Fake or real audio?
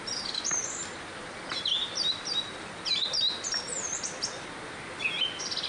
real